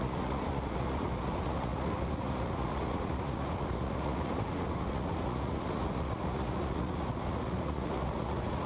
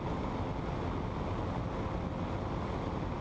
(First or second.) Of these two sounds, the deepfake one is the first